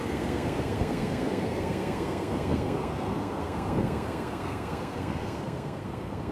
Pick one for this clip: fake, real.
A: fake